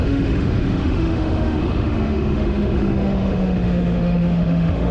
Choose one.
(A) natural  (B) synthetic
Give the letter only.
B